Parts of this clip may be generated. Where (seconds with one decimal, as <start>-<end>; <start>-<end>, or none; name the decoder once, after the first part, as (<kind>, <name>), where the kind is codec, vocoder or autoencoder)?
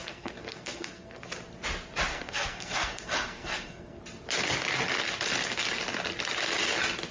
0.0-1.3 (codec, SNAC); 2.1-4.0